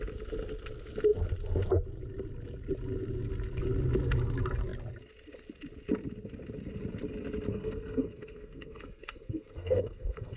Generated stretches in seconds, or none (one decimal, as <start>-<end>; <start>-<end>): 7.5-10.4